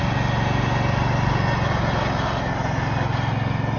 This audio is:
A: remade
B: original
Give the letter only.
B